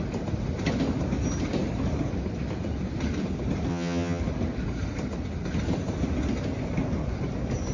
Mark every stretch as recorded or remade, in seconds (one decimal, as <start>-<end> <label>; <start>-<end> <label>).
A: 0.0-3.7 recorded; 3.7-4.2 remade; 4.2-7.7 recorded